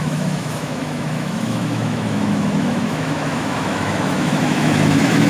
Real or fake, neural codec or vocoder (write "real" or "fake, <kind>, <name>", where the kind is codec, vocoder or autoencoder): fake, autoencoder, DAC-VAE